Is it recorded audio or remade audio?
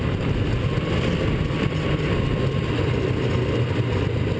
recorded